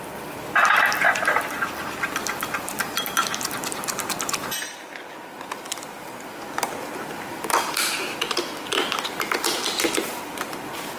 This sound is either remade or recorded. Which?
recorded